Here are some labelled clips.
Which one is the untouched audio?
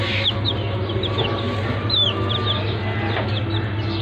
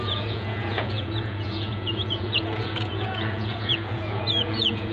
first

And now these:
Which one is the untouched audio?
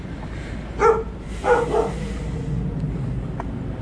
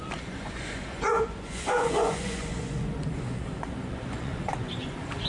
first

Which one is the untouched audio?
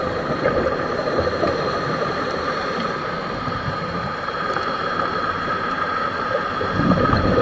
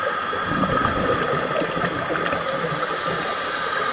second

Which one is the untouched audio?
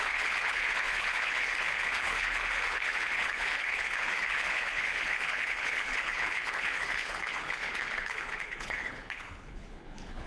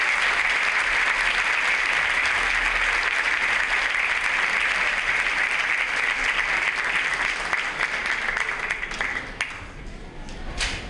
second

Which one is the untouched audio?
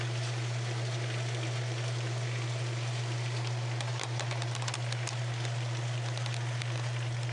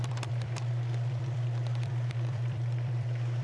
first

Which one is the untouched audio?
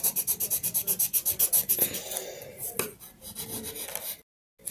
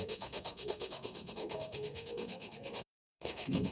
first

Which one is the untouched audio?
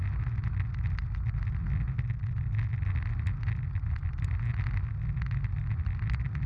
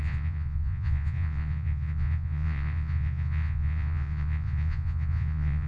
first